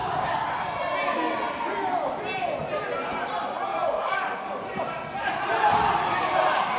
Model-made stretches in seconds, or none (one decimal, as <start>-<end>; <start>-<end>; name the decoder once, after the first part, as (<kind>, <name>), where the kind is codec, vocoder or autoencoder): 3.7-4.6 (codec, DAC)